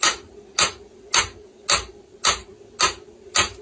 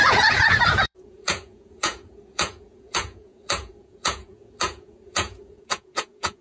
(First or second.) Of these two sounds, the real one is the first